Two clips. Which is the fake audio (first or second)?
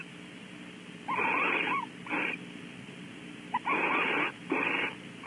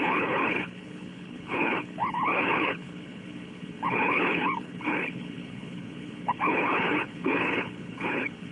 second